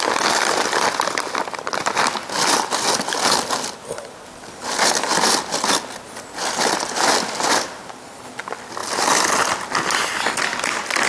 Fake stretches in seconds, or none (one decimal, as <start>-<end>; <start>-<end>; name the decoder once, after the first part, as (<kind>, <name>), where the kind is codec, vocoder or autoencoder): none